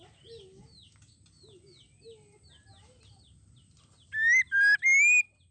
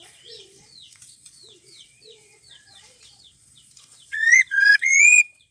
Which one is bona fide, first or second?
first